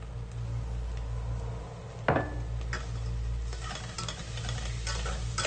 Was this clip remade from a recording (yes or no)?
no